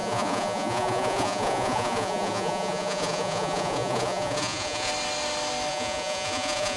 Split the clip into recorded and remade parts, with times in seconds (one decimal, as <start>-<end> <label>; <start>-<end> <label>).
0.0-4.9 remade; 4.9-5.7 recorded; 5.7-6.8 remade